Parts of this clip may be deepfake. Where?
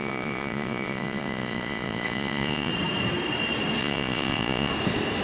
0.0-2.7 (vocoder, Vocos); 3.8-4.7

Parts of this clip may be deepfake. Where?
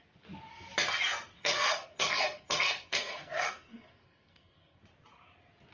1.4-4.8 (codec, SNAC)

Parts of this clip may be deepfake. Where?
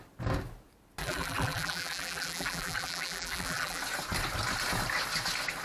1.0-3.8 (vocoder, BigVGAN v2)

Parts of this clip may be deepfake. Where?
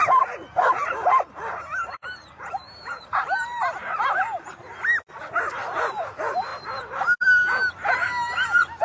1.8-4.2 (vocoder, BigVGAN v2)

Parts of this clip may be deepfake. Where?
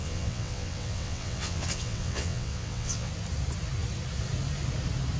0.0-3.1 (vocoder, WaveNeXt)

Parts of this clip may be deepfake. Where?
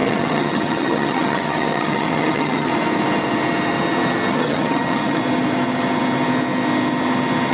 0.0-2.7 (vocoder, HiFi-GAN); 4.3-5.2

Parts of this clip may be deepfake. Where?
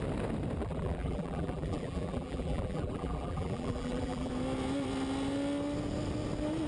0.6-4.3 (vocoder, BigVGAN v2)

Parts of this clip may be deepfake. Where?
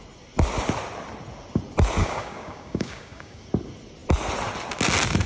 2.0-3.4 (codec, DAC)